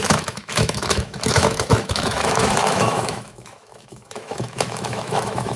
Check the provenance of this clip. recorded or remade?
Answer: remade